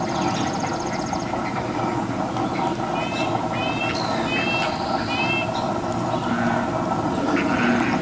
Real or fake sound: real